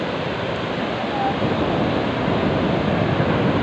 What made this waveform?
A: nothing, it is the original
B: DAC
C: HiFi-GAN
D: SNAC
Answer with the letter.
A